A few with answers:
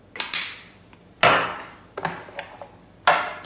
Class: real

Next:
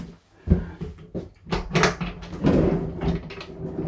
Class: real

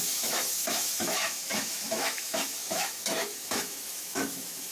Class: fake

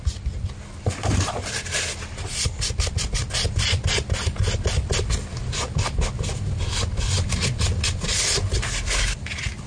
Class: real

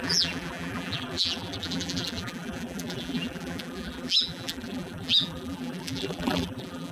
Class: fake